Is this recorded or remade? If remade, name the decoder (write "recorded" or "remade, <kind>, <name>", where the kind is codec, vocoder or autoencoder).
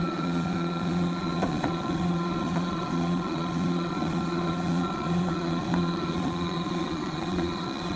remade, vocoder, Vocos